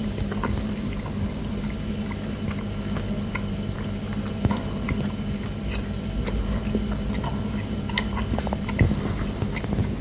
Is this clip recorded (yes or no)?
yes